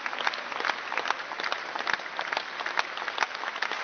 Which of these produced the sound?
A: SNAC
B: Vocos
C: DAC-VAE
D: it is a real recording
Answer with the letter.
D